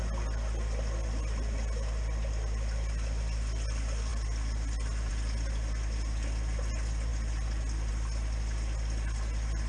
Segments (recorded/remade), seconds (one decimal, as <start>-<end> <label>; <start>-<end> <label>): 0.0-9.7 recorded